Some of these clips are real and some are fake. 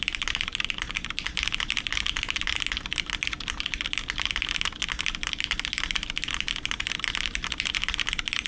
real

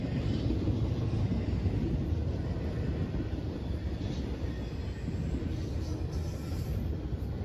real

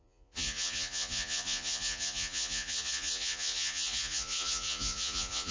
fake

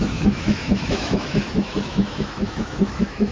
fake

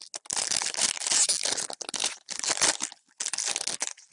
real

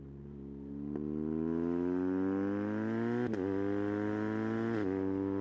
real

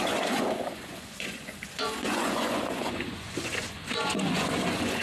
fake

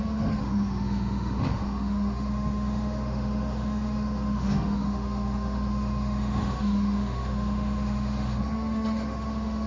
fake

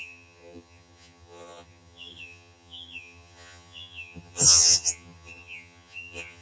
fake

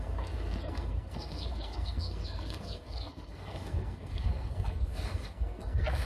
fake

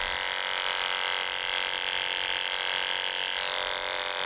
fake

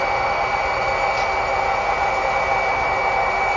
real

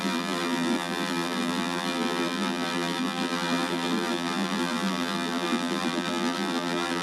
fake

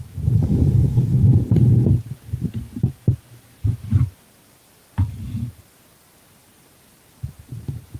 fake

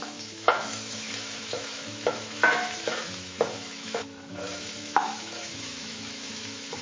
fake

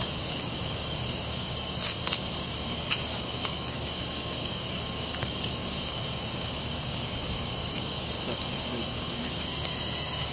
fake